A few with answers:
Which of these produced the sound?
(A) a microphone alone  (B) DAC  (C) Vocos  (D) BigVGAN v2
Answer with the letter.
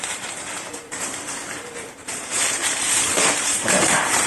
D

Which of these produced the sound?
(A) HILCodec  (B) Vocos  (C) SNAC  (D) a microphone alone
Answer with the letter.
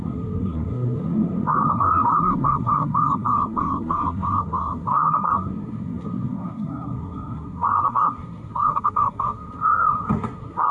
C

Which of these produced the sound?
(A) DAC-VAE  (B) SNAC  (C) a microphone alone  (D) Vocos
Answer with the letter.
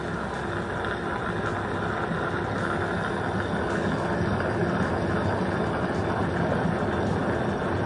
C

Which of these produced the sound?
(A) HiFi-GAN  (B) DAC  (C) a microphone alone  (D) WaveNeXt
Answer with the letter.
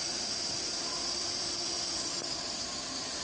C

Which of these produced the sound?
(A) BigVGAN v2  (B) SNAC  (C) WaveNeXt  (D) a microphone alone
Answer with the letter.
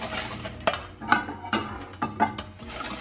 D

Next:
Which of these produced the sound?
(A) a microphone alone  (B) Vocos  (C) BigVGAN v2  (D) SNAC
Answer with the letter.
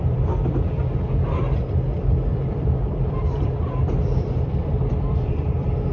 C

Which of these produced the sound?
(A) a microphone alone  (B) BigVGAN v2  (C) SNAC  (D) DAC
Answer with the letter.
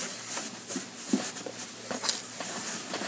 A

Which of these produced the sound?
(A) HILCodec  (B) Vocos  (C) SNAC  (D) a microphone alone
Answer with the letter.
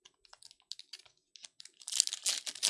D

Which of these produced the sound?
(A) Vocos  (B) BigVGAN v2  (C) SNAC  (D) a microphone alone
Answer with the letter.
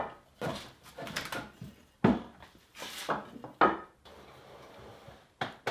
D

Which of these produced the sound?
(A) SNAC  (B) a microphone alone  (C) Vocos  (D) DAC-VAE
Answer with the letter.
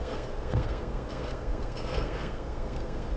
A